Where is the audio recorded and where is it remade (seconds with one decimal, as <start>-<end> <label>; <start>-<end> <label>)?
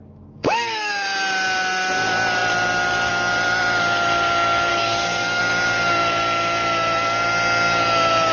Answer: 0.0-0.4 recorded; 0.4-0.9 remade; 0.9-4.7 recorded; 4.7-5.4 remade; 5.4-8.3 recorded